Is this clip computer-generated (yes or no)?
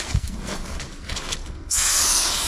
yes